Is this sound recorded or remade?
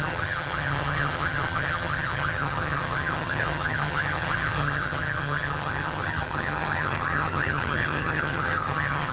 remade